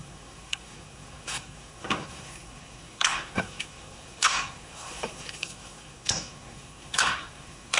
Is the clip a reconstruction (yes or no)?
yes